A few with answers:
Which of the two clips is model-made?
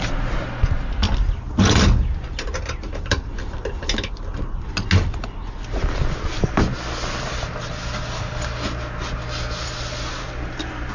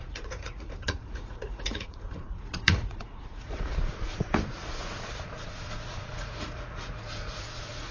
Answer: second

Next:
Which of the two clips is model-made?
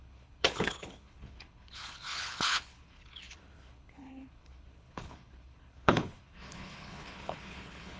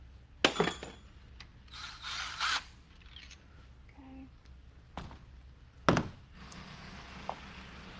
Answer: first